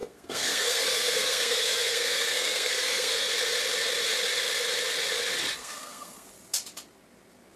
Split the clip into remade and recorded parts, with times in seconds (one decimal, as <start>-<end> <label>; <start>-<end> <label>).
0.0-3.3 remade; 3.3-5.6 recorded; 5.6-6.3 remade; 6.3-7.6 recorded